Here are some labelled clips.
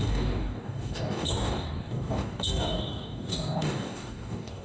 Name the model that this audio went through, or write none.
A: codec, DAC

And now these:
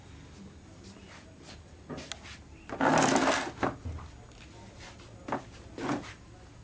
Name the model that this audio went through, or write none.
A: none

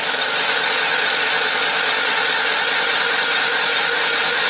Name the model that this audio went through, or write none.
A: vocoder, BigVGAN v2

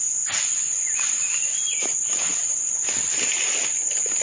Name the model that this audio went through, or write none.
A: vocoder, BigVGAN v2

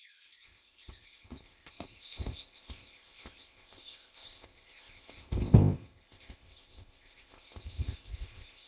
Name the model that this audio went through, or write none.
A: codec, ZipCodec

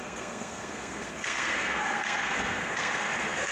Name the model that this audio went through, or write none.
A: codec, SNAC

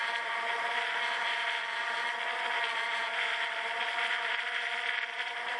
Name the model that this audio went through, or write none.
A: vocoder, BigVGAN v2